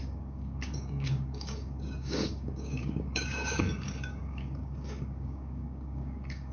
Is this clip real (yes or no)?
no